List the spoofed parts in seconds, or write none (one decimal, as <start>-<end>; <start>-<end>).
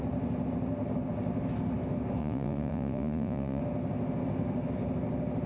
2.2-3.6